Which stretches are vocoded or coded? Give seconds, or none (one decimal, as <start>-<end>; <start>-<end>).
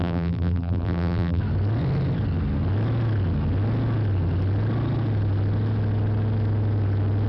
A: 0.0-1.4